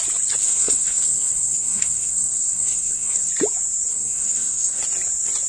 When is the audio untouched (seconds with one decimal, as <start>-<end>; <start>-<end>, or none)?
0.0-0.4; 3.3-3.9; 4.8-5.5